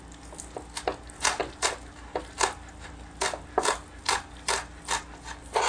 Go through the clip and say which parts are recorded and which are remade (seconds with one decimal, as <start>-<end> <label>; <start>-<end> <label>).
0.0-5.7 recorded